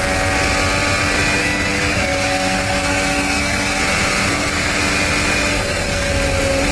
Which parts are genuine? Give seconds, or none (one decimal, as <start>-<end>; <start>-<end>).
0.0-1.4; 3.8-4.3; 4.8-5.5; 6.1-6.7

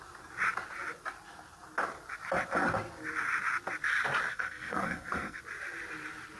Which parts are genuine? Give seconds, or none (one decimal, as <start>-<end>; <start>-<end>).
0.0-4.3; 5.4-6.4

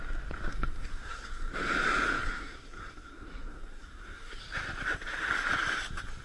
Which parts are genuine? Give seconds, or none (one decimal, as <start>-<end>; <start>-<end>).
0.0-0.5; 1.5-2.2; 4.4-6.2

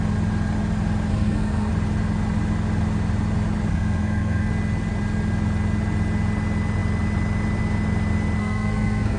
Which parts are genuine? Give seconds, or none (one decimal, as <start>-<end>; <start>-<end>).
0.0-1.1; 1.7-3.7; 4.5-8.4

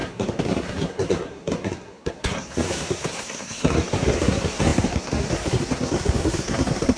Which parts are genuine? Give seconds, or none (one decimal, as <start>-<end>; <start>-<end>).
none

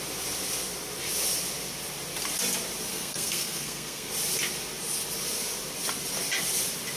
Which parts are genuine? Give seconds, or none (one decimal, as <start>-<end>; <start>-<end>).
0.0-2.9; 4.1-7.0